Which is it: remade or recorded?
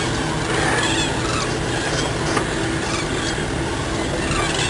recorded